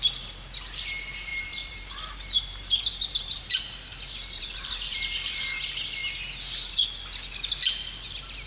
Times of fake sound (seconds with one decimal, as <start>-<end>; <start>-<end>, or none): 1.3-5.4